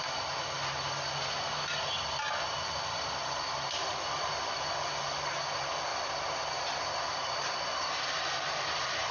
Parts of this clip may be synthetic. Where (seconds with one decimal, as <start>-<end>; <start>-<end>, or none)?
none